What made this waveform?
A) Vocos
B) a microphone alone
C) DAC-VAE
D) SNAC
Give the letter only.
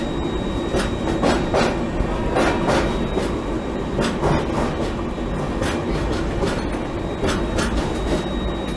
B